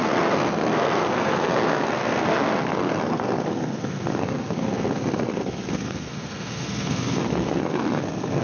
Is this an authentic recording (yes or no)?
no